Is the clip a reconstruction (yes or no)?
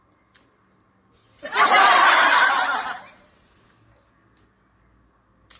no